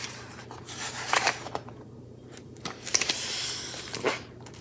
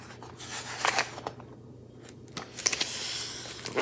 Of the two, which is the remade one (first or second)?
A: first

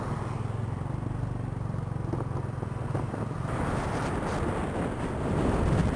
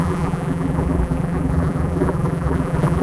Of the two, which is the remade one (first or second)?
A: second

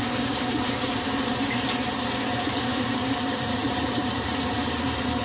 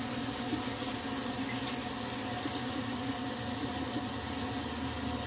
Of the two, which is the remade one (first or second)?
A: first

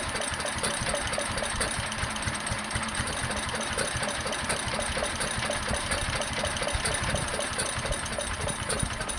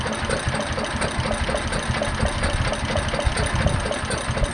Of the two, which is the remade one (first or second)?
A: first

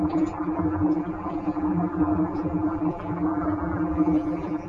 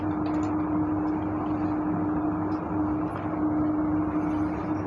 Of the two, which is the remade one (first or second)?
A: first